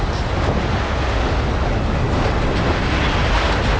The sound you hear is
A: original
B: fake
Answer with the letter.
A